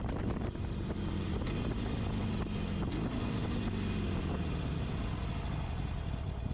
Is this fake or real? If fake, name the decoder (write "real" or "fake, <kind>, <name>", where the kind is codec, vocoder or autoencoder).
real